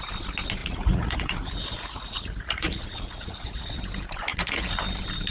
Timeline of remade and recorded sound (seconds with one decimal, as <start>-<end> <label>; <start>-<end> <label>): 0.0-0.6 recorded; 0.6-3.8 remade; 3.8-4.3 recorded; 4.3-4.8 remade; 4.8-5.3 recorded